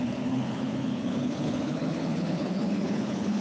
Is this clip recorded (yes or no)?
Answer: no